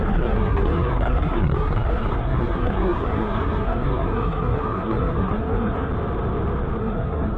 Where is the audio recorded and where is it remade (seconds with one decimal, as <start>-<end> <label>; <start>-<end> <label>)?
0.0-5.9 remade; 5.9-6.8 recorded; 6.8-7.4 remade